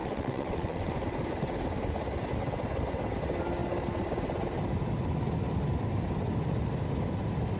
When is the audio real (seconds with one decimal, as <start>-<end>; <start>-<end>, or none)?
0.9-7.6